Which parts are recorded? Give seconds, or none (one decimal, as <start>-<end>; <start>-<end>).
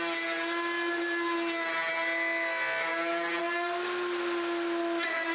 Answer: 0.0-5.3